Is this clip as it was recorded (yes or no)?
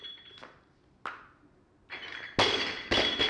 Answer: yes